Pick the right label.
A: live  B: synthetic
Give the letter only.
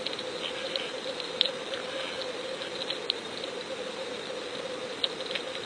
A